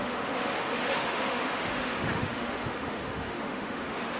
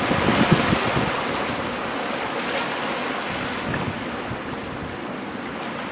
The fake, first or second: first